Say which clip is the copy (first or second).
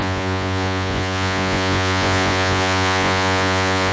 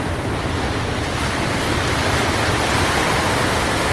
first